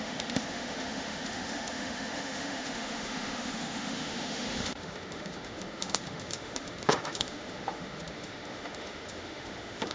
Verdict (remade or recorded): remade